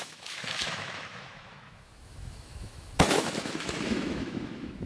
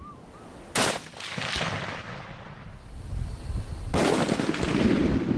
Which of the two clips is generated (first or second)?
first